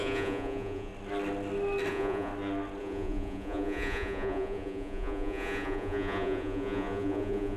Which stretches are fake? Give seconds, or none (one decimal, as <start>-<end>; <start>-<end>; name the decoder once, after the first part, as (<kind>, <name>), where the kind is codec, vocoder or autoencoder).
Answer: 0.0-0.9 (vocoder, Vocos); 1.9-2.3; 2.8-7.6